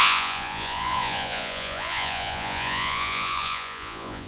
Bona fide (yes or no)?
no